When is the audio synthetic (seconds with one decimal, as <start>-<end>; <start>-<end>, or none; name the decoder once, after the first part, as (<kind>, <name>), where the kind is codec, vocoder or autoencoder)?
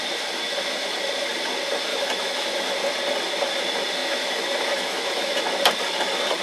1.9-2.7 (autoencoder, DAC-VAE); 4.0-5.4